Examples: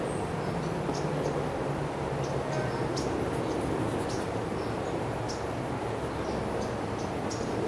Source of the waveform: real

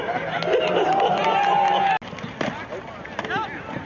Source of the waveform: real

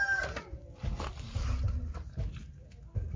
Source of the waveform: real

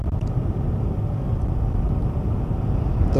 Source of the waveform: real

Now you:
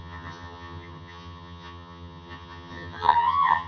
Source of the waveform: fake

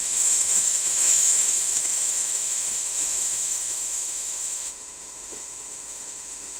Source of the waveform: fake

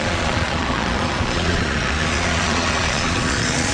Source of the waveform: fake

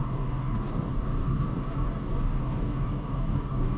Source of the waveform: fake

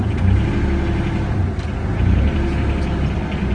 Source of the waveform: real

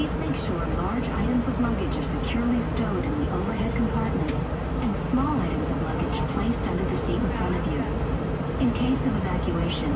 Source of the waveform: real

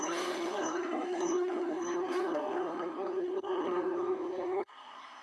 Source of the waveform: fake